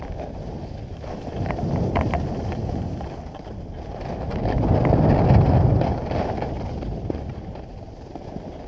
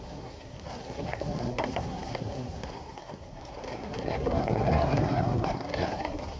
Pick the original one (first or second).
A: first